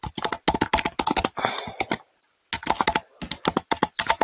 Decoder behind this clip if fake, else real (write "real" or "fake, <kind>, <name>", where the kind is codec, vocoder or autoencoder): real